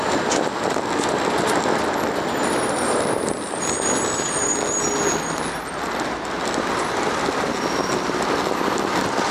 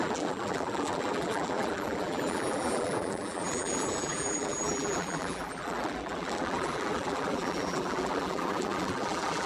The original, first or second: first